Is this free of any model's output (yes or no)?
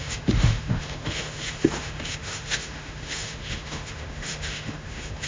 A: no